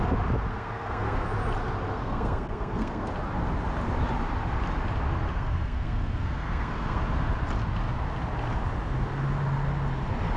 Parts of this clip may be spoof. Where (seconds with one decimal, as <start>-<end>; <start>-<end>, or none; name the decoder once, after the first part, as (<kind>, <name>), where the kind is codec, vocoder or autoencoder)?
0.5-1.3 (codec, SNAC); 1.9-3.1; 5.3-7.0